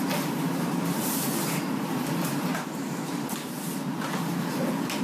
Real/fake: real